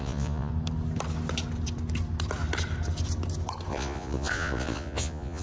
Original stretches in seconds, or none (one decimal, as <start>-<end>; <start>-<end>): 0.5-3.7